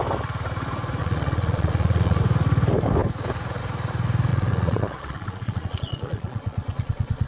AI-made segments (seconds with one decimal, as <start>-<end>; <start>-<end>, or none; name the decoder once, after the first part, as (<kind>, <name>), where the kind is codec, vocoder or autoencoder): 1.0-2.2 (vocoder, Vocos); 4.3-7.3